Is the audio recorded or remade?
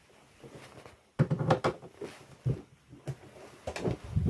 recorded